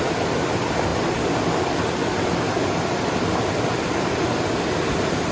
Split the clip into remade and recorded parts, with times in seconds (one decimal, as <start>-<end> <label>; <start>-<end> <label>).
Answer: 0.0-5.3 recorded